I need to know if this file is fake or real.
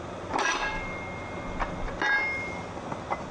real